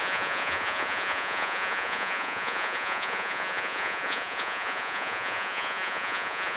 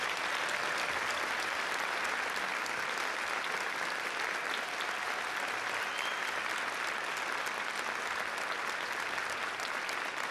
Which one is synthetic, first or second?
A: first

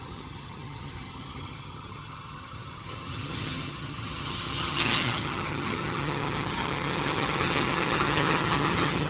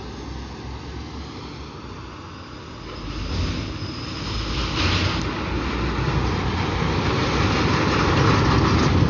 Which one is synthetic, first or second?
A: first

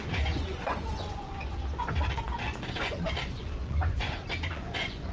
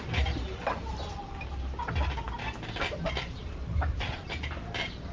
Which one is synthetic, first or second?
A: first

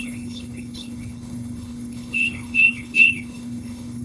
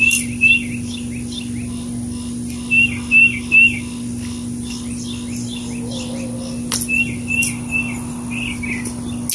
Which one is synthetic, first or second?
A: first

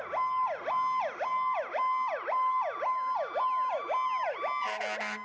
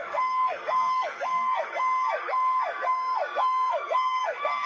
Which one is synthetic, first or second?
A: second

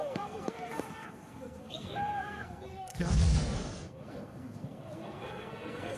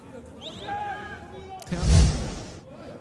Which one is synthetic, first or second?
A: first